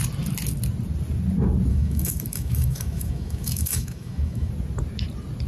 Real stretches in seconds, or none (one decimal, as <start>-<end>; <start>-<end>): 0.0-1.7; 4.5-5.5

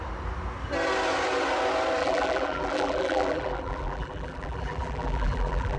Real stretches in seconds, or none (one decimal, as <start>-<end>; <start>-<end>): 0.0-2.0

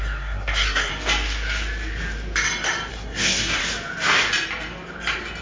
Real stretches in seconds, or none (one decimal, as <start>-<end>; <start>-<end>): 0.9-2.9; 3.6-5.4

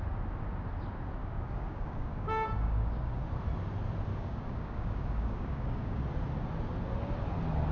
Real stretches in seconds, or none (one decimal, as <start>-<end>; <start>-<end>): 0.0-1.2; 3.2-4.1; 6.0-7.7

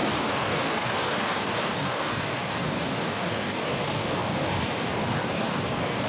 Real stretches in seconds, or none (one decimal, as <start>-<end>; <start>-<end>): none

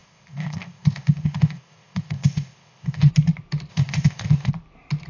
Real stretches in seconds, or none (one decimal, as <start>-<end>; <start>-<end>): 3.1-3.7; 4.5-5.1

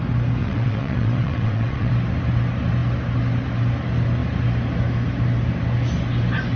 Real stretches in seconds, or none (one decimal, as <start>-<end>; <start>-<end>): 0.0-0.4; 1.9-6.6

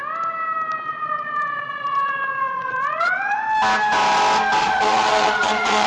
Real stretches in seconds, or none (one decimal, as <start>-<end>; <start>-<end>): 0.0-0.9; 3.4-4.6